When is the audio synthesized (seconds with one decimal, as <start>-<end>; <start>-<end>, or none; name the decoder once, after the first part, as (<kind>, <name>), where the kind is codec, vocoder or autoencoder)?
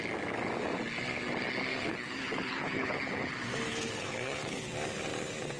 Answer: 1.7-3.3 (codec, HILCodec); 3.7-4.7